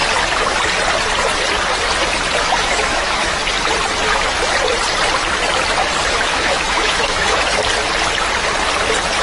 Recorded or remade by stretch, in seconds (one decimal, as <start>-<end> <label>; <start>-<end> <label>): 0.0-2.4 recorded; 2.4-3.4 remade; 3.4-6.1 recorded; 6.1-7.6 remade; 7.6-9.2 recorded